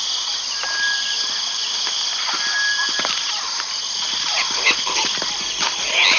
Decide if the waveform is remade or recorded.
recorded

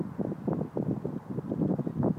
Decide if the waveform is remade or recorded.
recorded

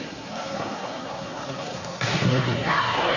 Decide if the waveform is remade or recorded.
remade